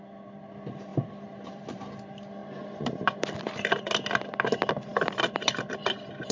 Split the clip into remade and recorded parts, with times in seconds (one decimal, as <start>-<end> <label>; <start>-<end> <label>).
0.0-0.9 recorded; 0.9-1.9 remade; 1.9-2.4 recorded; 2.4-3.9 remade; 3.9-4.9 recorded; 4.9-6.3 remade